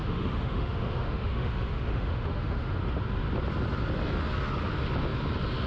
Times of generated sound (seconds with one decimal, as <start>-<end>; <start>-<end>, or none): 0.0-2.7